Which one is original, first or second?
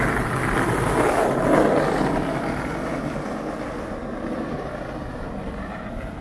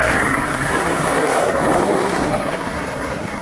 first